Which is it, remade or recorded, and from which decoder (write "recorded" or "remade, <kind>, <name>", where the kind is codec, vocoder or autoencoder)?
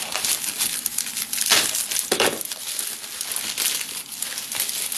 recorded